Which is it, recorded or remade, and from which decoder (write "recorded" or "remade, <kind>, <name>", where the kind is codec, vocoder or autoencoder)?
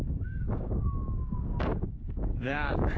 remade, codec, DAC